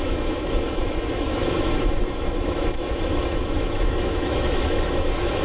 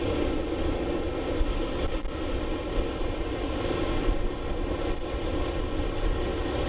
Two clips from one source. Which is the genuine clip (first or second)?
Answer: second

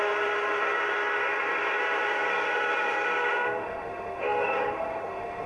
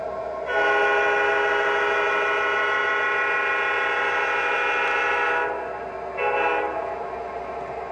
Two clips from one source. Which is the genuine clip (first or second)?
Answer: second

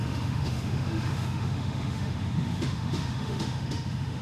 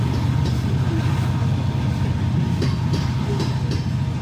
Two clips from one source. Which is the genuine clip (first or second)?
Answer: second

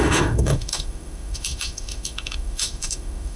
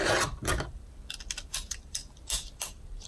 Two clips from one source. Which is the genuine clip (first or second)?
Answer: second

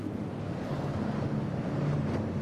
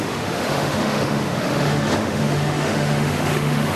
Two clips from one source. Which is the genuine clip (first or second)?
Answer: first